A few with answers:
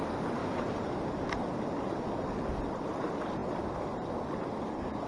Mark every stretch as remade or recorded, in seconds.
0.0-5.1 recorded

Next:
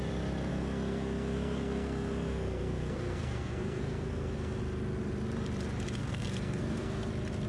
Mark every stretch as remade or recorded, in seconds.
0.0-0.5 recorded; 0.5-4.6 remade; 4.6-6.0 recorded; 6.0-7.1 remade; 7.1-7.5 recorded